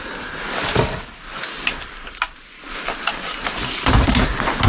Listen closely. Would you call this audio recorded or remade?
recorded